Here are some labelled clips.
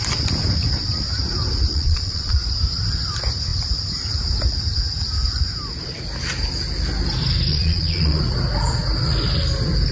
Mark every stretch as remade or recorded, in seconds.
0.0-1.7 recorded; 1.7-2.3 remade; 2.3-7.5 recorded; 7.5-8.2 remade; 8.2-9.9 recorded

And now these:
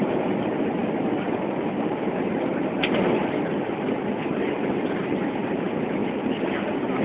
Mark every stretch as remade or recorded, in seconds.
0.0-7.0 recorded

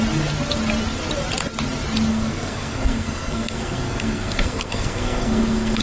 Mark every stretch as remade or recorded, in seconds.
0.0-2.1 recorded; 2.1-5.8 remade

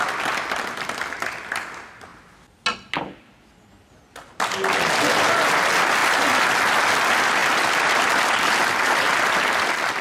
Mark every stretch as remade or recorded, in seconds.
0.0-10.0 recorded

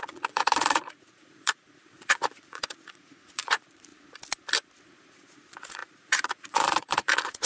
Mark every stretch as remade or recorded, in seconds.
0.0-3.9 remade; 3.9-4.8 recorded; 4.8-7.5 remade

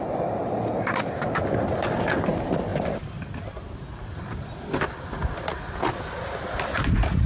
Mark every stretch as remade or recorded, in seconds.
0.0-7.3 recorded

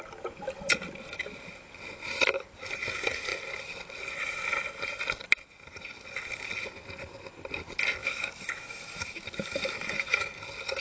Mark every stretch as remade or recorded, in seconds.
0.0-8.0 recorded; 8.0-10.3 remade; 10.3-10.8 recorded

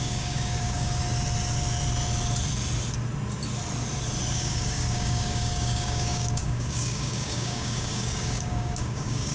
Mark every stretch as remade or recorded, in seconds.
0.0-1.0 remade; 1.0-4.3 recorded; 4.3-9.3 remade